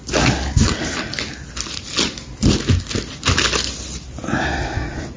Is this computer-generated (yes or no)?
no